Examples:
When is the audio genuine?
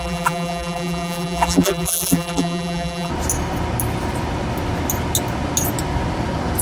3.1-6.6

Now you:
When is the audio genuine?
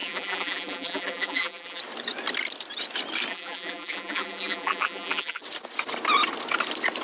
1.8-3.3; 5.4-7.0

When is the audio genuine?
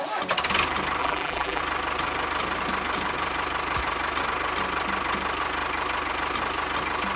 0.0-1.0; 1.6-7.2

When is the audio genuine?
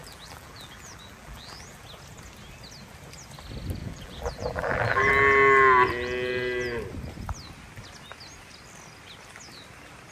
1.8-3.8; 5.1-10.1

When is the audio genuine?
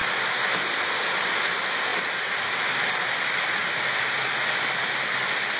0.0-5.6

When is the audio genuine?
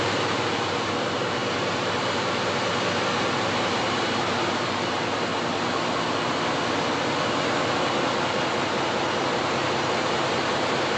1.4-3.2; 5.3-9.3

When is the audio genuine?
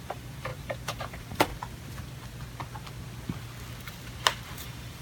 1.5-4.5